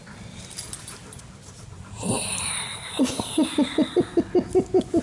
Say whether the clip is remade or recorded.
recorded